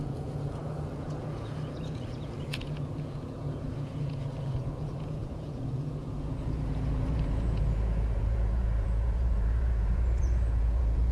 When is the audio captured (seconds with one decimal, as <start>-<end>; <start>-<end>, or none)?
none